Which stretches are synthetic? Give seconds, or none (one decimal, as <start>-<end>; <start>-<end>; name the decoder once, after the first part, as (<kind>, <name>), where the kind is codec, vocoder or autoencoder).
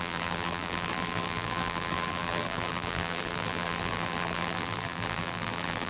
0.0-5.9 (vocoder, BigVGAN v2)